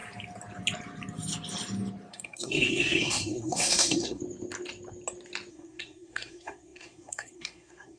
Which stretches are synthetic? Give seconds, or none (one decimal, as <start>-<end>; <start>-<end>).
2.1-4.2; 5.5-8.0